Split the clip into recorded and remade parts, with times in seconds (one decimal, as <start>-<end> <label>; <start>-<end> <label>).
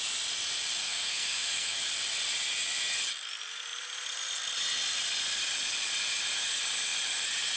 0.0-0.8 recorded; 0.8-1.8 remade; 1.8-7.6 recorded